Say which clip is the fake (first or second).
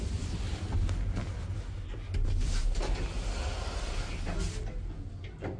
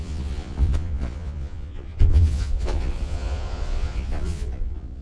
second